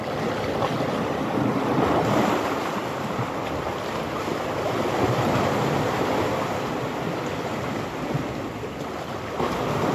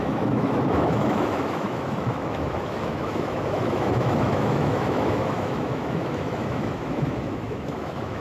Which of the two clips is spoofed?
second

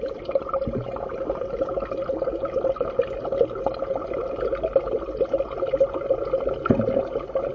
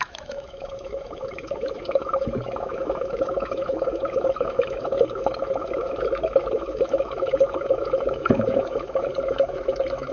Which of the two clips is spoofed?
second